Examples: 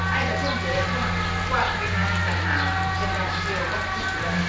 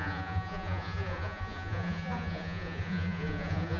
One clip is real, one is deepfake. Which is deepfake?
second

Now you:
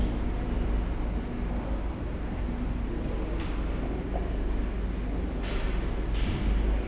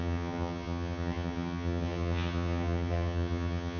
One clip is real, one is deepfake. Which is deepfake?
second